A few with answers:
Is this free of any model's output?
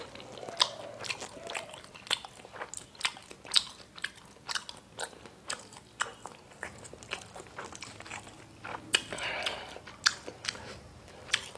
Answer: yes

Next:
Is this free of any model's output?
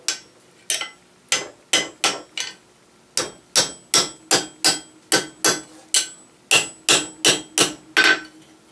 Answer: yes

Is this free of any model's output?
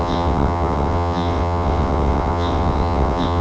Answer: no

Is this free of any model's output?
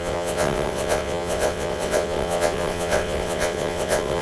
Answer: no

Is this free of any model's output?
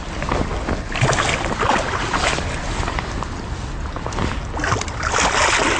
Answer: yes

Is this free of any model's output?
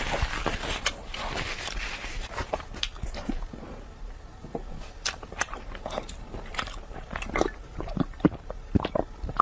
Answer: yes